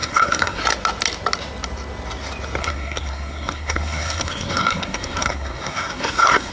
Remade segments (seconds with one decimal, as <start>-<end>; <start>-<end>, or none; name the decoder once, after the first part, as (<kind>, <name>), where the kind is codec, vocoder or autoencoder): 0.0-0.6 (codec, SNAC); 2.6-6.5